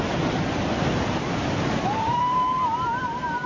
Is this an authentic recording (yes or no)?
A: yes